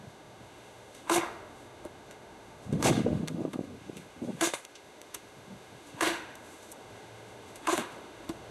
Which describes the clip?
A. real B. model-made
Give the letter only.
B